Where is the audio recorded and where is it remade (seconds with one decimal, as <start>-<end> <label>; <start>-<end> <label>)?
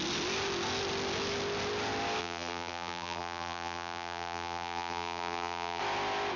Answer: 0.0-2.2 recorded; 2.2-5.8 remade; 5.8-6.4 recorded